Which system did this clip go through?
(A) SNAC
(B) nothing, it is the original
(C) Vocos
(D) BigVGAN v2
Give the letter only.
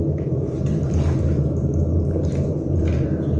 D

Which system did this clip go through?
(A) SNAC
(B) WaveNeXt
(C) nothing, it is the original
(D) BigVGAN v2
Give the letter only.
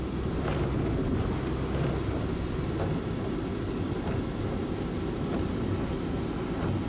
C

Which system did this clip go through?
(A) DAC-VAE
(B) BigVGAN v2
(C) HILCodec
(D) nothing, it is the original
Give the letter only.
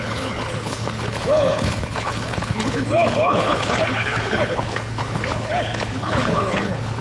C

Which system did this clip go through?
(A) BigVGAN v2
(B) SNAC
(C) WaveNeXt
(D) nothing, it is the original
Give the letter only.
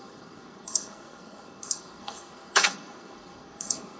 B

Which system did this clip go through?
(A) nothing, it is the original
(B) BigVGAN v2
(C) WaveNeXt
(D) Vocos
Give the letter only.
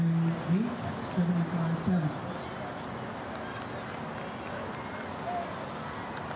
A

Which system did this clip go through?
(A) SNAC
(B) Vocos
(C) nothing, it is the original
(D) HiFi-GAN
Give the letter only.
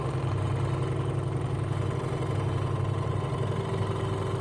C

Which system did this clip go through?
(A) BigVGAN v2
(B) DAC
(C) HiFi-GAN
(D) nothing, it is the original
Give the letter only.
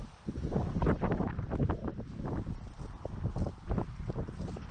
D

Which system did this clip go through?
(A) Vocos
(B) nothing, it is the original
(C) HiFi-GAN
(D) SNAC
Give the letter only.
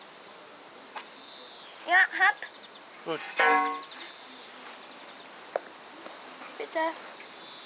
B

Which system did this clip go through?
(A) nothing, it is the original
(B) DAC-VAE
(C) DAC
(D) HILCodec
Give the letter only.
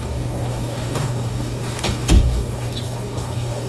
C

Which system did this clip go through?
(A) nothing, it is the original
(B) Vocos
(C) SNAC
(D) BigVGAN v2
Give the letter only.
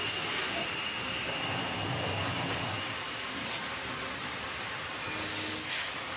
A